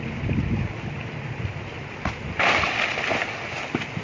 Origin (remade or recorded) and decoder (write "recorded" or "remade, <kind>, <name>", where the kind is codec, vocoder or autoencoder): recorded